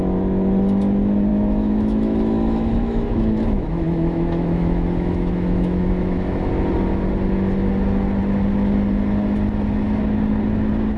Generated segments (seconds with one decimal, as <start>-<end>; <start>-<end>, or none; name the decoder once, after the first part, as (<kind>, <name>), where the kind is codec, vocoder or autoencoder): 1.3-6.5 (autoencoder, DAC-VAE)